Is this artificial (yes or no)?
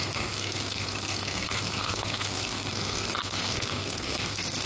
yes